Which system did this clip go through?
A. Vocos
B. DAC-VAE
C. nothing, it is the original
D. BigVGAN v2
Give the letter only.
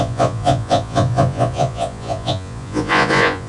A